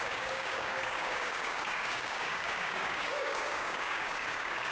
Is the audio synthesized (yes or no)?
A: yes